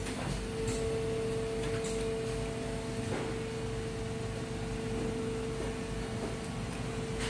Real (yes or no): yes